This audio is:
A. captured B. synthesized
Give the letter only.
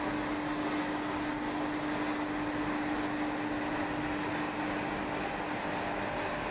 A